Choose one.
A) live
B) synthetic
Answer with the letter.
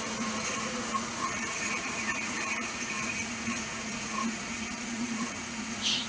B